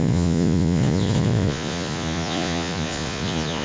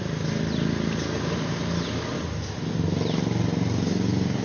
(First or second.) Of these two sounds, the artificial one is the first